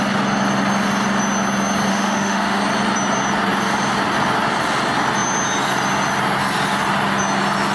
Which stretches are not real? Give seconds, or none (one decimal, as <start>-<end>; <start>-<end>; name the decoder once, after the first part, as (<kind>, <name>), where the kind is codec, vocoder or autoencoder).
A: 1.9-2.6 (autoencoder, DAC-VAE)